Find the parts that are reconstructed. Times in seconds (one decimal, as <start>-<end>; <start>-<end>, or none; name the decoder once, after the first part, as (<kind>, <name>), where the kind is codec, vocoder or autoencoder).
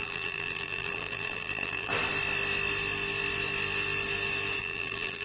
0.0-1.9 (vocoder, BigVGAN v2); 4.6-5.2